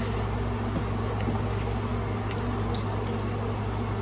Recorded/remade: recorded